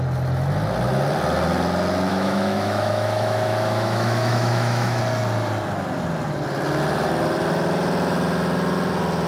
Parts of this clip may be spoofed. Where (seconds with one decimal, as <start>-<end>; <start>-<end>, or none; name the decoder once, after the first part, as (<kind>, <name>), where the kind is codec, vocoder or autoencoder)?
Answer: 2.1-5.0 (autoencoder, DAC-VAE)